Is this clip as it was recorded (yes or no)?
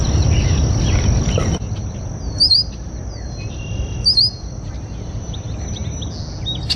yes